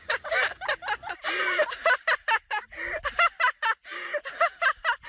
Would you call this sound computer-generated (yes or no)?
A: no